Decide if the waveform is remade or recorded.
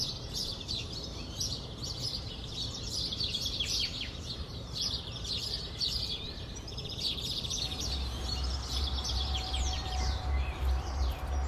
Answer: remade